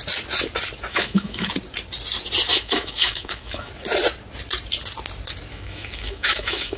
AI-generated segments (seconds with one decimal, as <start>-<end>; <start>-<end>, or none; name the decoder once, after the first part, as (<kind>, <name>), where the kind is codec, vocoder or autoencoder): 0.9-1.5 (autoencoder, DAC-VAE); 2.5-3.7; 5.5-6.8